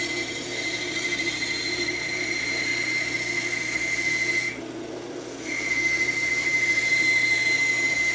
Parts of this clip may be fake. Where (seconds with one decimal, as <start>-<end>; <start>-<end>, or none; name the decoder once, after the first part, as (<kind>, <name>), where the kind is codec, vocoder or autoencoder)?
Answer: 0.0-2.7 (vocoder, BigVGAN v2); 5.7-8.1

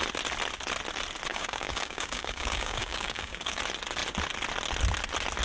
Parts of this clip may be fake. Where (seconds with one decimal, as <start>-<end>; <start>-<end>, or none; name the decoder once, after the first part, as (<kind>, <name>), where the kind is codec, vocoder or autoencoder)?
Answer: 1.3-3.6 (codec, DAC)

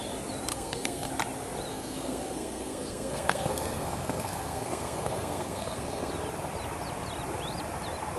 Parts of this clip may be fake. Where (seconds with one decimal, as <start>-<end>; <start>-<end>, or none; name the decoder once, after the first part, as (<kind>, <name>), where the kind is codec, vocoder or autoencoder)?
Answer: 0.5-1.1 (codec, SNAC); 1.7-6.1